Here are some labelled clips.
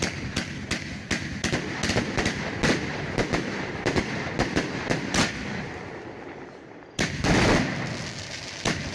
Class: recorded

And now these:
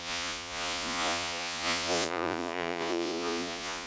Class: remade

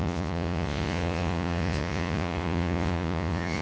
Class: remade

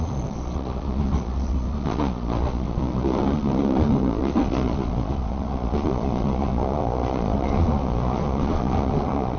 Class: remade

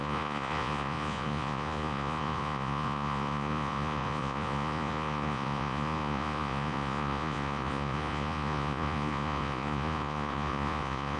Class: remade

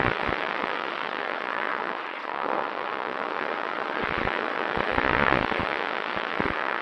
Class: remade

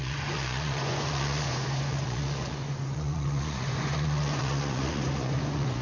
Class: remade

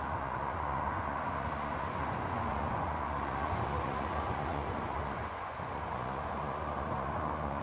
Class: remade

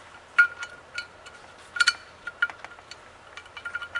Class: recorded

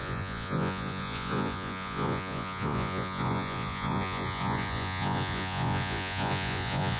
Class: remade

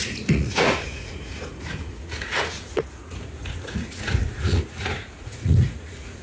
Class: remade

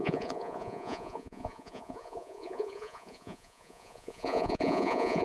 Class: remade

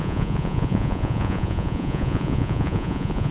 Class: remade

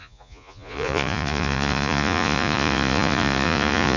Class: remade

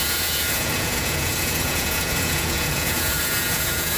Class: remade